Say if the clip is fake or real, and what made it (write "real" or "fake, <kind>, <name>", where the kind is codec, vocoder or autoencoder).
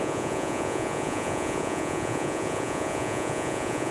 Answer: fake, vocoder, Vocos